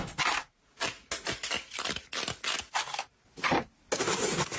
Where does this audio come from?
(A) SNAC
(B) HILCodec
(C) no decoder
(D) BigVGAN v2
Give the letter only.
C